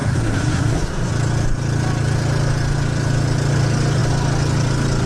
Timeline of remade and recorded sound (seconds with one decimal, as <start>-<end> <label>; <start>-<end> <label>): 0.0-1.1 remade; 1.1-5.1 recorded